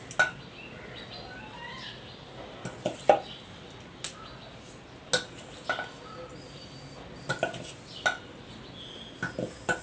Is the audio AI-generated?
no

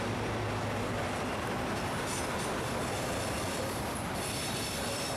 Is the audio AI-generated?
yes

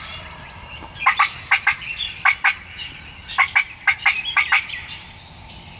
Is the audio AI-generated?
yes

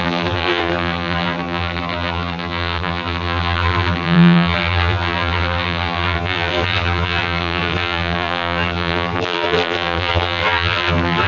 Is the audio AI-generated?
yes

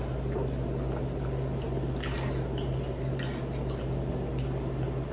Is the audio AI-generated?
no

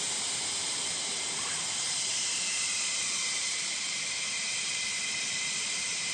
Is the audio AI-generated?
yes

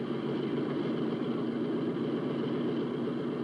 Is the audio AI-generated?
no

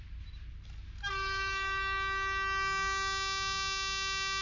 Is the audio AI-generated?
no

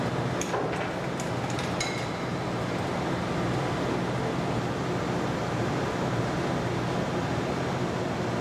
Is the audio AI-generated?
no